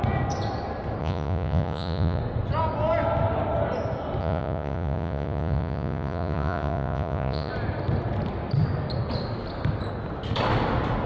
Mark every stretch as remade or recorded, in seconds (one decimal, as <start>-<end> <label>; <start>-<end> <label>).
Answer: 0.0-1.0 recorded; 1.0-2.2 remade; 2.2-4.2 recorded; 4.2-7.5 remade; 7.5-11.1 recorded